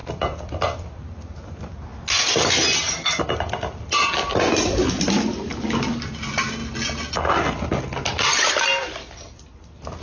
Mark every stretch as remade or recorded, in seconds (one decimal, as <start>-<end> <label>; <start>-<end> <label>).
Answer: 0.0-10.0 recorded